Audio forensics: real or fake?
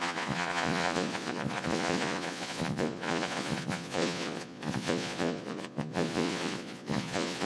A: fake